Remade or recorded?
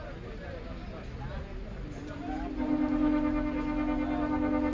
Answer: recorded